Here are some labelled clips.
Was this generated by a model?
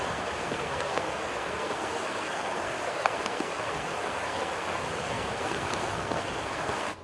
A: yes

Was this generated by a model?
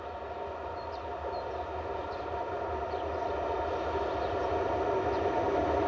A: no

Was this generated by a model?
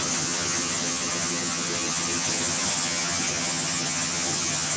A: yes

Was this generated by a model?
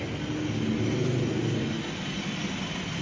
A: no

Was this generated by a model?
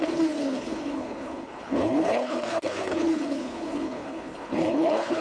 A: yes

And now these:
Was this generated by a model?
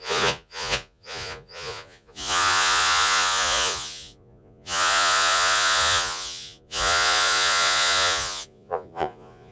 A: yes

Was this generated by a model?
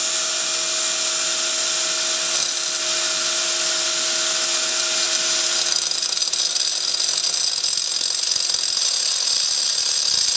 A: no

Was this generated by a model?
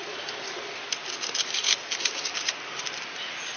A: no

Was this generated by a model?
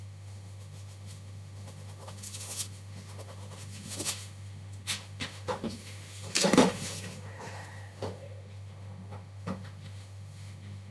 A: yes